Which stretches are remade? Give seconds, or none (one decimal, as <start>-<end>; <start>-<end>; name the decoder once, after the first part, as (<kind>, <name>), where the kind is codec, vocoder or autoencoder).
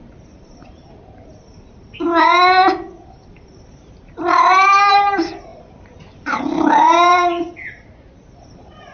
0.0-0.8 (vocoder, BigVGAN v2); 3.6-7.1; 8.4-8.9